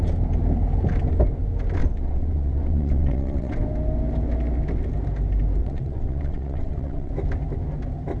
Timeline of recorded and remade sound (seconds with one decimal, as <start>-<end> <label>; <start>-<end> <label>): 0.0-1.8 recorded; 1.8-3.5 remade; 3.5-5.6 recorded; 5.6-7.1 remade; 7.1-8.2 recorded